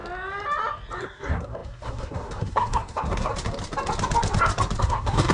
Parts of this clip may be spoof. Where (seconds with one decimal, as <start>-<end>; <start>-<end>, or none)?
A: 1.0-3.3; 4.8-5.3